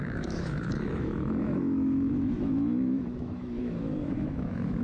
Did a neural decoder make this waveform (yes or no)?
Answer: yes